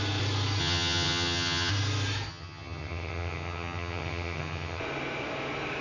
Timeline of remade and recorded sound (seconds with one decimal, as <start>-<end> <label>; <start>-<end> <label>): 0.0-0.6 recorded; 0.6-1.7 remade; 1.7-2.3 recorded; 2.3-4.8 remade; 4.8-5.8 recorded